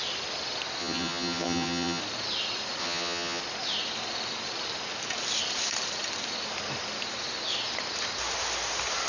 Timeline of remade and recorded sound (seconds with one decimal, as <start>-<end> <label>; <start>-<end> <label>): 0.0-0.8 recorded; 0.8-2.0 remade; 2.0-2.8 recorded; 2.8-3.4 remade; 3.4-9.1 recorded